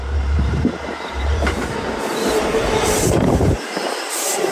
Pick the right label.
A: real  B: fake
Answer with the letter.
B